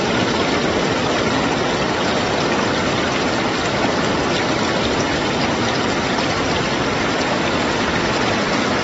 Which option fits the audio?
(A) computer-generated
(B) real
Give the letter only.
A